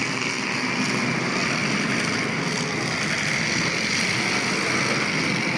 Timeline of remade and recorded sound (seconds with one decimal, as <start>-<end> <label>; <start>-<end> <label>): 0.0-5.6 recorded